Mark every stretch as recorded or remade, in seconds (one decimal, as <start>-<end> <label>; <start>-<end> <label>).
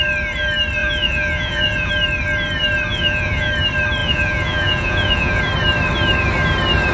0.0-0.8 recorded; 0.8-1.9 remade; 1.9-2.9 recorded; 2.9-3.5 remade; 3.5-4.0 recorded; 4.0-5.4 remade; 5.4-6.9 recorded